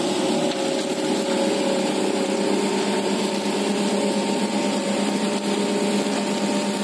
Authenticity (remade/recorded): recorded